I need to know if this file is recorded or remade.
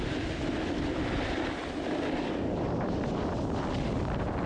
recorded